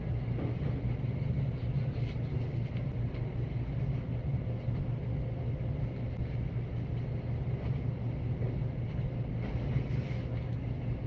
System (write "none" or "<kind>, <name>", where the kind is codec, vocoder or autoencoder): none